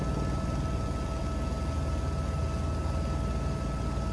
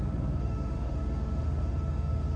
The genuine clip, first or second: first